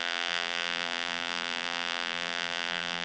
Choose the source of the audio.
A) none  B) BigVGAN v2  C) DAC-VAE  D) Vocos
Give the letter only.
B